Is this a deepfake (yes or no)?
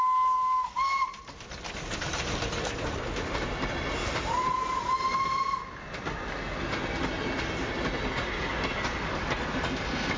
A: no